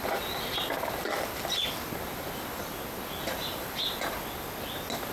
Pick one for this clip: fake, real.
real